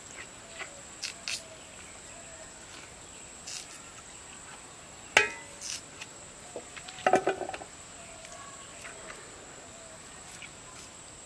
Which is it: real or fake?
real